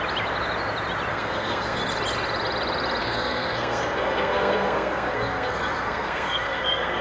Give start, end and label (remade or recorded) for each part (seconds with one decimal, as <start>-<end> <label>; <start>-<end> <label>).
0.0-1.1 recorded; 1.1-1.8 remade; 1.8-3.0 recorded; 3.0-7.0 remade